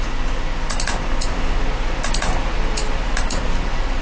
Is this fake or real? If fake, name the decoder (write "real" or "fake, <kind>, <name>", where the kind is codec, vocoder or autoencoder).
real